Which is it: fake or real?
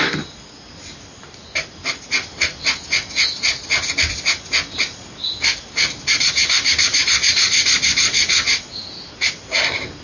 real